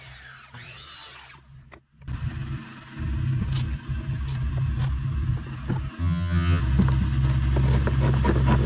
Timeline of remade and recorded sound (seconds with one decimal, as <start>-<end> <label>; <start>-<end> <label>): 0.0-6.0 recorded; 6.0-6.6 remade; 6.6-8.7 recorded